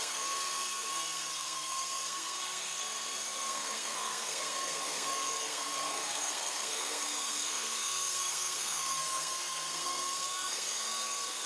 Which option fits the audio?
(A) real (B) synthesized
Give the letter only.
B